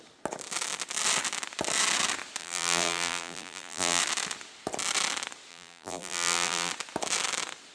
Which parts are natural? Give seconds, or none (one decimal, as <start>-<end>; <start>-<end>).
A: 0.0-2.4; 4.0-5.5; 6.7-7.7